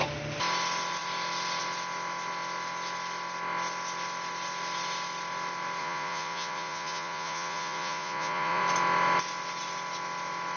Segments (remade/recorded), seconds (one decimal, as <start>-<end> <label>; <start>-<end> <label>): 0.0-5.8 recorded; 5.8-8.6 remade; 8.6-10.6 recorded